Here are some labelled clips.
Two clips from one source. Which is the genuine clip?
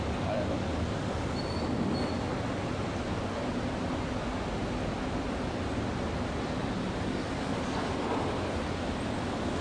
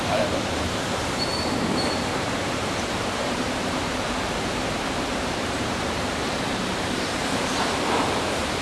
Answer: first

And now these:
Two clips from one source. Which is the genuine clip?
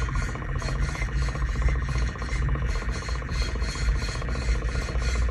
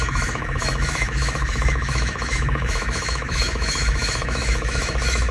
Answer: first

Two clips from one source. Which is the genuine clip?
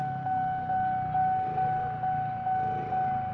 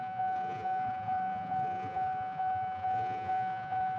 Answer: first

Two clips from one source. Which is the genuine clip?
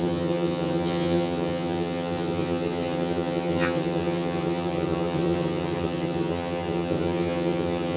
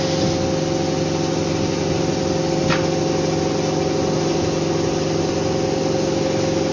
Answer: second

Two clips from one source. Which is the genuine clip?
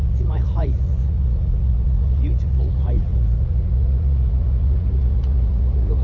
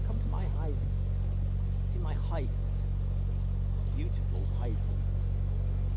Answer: second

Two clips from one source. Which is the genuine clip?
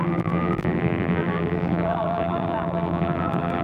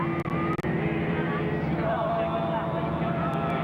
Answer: second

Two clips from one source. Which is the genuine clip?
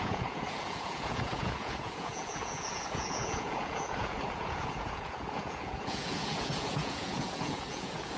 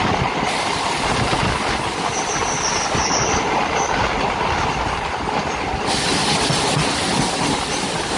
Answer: second